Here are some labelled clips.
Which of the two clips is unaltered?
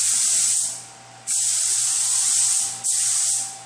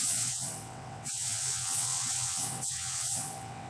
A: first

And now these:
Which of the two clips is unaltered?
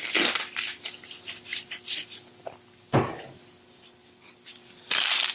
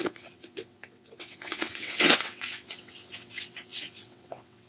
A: first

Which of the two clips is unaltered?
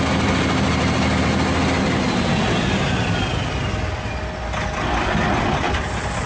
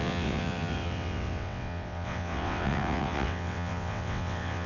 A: first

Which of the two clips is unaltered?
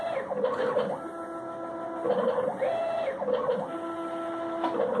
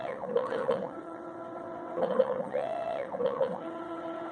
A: first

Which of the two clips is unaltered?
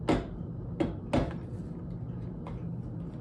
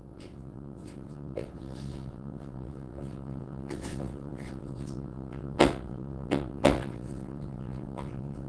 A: first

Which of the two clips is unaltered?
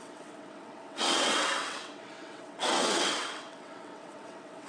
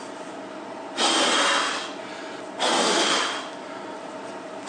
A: second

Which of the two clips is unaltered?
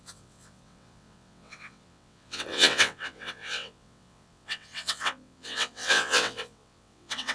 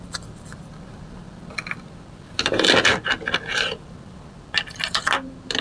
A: second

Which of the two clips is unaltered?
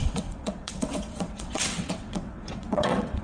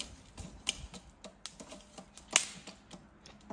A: second